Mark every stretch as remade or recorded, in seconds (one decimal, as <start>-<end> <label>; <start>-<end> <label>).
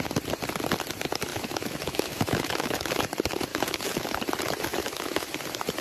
0.0-1.3 recorded; 1.3-2.9 remade; 2.9-3.5 recorded; 3.5-4.2 remade; 4.2-4.7 recorded; 4.7-5.3 remade; 5.3-5.8 recorded